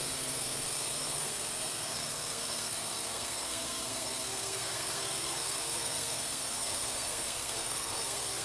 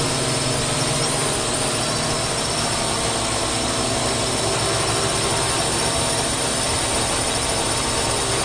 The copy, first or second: first